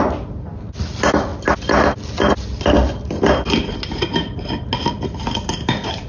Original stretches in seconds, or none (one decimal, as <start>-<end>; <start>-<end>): 0.0-6.1